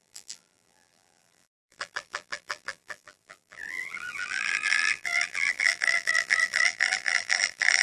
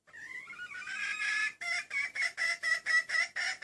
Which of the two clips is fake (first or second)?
first